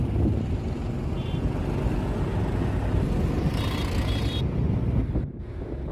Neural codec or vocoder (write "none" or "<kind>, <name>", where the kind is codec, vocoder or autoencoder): none